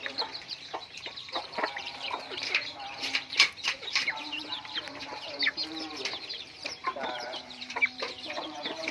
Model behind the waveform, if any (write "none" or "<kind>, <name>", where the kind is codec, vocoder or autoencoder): vocoder, BigVGAN v2